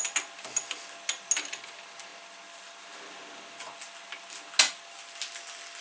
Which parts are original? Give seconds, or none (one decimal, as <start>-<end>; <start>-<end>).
0.0-5.8